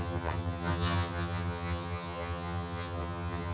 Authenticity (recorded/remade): remade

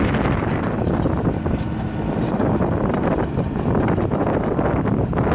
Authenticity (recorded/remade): recorded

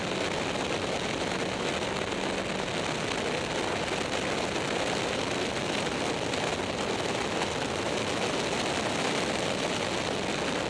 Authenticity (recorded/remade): recorded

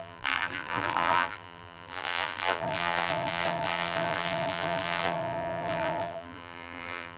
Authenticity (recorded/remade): remade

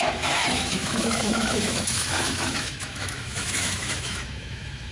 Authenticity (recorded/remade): remade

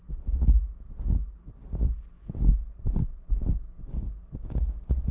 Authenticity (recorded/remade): recorded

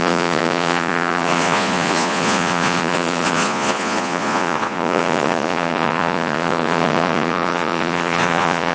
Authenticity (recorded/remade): remade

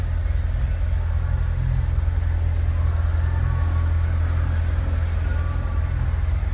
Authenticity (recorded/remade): recorded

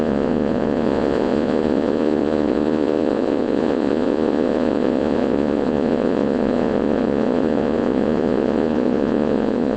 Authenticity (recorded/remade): remade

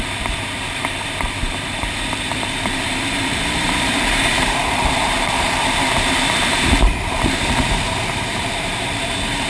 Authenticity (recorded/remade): remade